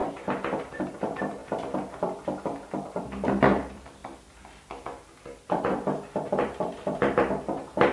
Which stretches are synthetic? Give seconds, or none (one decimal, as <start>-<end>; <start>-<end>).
0.6-1.4; 3.0-4.0; 6.3-7.9